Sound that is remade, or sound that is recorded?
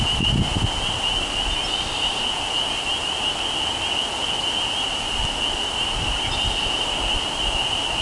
recorded